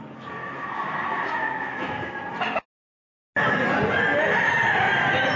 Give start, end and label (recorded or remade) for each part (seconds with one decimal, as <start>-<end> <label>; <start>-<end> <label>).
0.0-0.4 recorded; 0.4-2.1 remade; 2.1-5.4 recorded